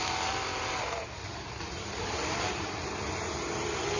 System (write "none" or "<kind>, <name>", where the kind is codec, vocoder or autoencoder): vocoder, BigVGAN v2